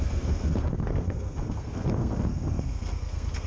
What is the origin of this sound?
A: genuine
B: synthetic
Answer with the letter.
B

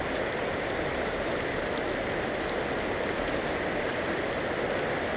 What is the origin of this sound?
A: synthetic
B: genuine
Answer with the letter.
B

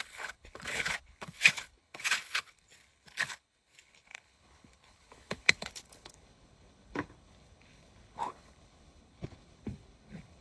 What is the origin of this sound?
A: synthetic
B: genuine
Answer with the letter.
A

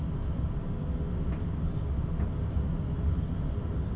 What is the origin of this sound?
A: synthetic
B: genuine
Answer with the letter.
B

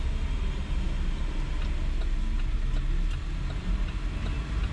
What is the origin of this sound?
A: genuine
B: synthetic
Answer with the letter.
A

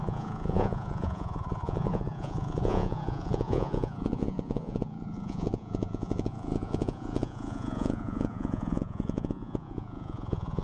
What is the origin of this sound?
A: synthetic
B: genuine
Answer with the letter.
A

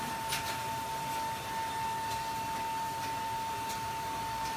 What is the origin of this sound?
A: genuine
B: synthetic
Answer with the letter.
A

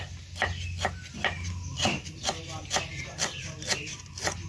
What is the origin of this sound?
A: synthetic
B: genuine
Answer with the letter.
B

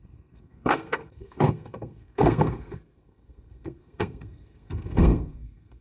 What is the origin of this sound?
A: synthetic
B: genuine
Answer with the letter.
A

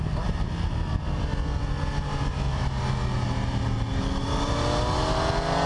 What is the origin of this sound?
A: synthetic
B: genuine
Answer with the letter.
B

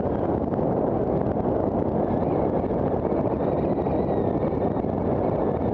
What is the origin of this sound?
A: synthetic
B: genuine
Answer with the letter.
B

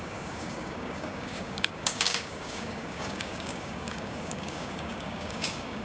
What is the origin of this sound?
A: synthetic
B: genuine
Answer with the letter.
A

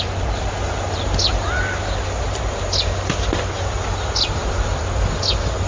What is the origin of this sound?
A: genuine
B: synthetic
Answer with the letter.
A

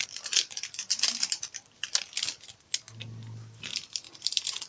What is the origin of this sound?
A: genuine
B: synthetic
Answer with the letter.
A